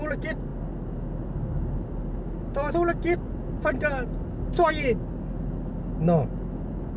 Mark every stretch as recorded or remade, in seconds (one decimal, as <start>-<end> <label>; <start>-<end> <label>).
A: 0.0-7.0 recorded